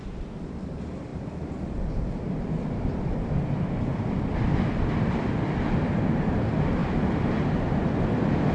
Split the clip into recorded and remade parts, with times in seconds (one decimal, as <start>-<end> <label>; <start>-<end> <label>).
0.0-1.1 recorded; 1.1-3.1 remade; 3.1-3.9 recorded; 3.9-4.5 remade; 4.5-8.5 recorded